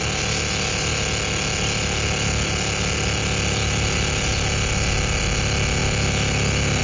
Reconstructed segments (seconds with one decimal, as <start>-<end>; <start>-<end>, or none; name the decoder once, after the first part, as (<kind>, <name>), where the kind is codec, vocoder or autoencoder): none